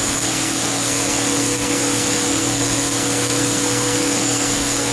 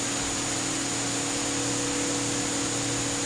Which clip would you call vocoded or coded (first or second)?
first